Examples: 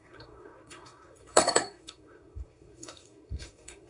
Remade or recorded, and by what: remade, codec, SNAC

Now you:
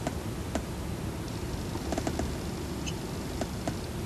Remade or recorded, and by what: recorded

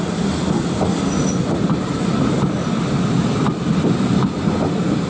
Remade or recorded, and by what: recorded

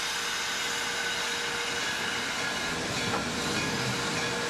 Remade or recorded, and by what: recorded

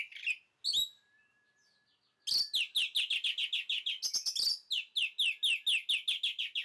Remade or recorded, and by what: recorded